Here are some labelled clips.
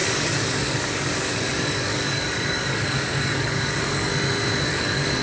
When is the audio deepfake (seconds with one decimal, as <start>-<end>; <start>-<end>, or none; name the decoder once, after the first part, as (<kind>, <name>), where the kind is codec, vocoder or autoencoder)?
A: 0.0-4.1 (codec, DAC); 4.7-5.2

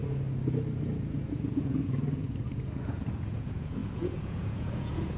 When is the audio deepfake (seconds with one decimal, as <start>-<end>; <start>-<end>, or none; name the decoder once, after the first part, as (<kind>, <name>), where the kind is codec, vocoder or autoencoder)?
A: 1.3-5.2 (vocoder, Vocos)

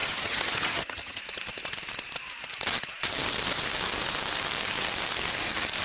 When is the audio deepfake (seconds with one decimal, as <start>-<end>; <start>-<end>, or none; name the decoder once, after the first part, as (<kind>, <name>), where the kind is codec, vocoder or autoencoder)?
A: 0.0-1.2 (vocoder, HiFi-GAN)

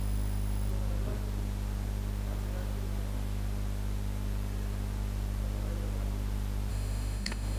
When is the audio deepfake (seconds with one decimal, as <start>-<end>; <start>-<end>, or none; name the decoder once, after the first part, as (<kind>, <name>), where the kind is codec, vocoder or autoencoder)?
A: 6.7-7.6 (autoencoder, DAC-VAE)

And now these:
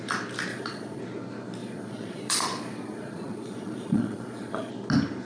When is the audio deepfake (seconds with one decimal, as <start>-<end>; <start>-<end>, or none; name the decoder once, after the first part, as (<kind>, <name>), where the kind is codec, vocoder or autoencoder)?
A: 0.5-1.0 (vocoder, Vocos); 1.6-4.7

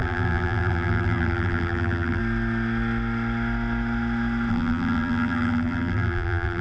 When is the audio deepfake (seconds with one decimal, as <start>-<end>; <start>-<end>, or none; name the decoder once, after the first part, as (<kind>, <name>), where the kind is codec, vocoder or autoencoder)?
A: 0.0-2.2 (vocoder, BigVGAN v2); 4.5-6.6

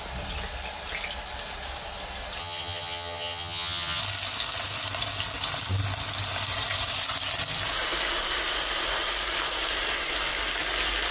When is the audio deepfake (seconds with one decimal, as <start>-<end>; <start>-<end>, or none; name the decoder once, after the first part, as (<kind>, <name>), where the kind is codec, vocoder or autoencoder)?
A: 2.4-4.0 (vocoder, HiFi-GAN)